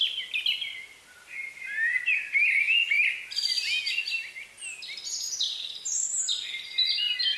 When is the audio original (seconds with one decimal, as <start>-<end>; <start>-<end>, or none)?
0.0-7.4